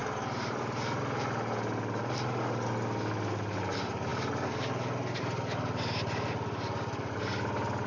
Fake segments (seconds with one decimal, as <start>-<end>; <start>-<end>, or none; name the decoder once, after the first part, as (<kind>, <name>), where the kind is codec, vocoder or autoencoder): 0.0-1.0 (vocoder, BigVGAN v2)